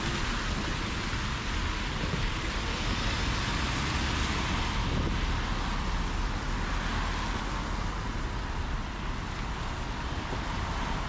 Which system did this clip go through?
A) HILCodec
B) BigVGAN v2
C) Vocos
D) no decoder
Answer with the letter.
D